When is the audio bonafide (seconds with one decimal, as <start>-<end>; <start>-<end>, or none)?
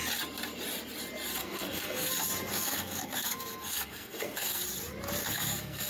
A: 0.0-1.4; 2.1-2.5; 4.6-5.2